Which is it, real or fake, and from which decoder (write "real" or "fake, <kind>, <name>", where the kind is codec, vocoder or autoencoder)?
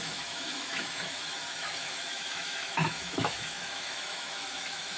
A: fake, autoencoder, DAC-VAE